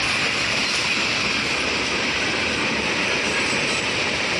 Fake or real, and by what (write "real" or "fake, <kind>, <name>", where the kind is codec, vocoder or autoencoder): real